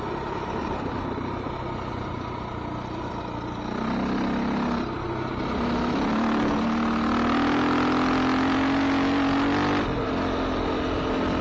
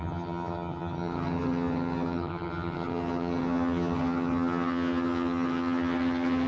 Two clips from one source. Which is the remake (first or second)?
second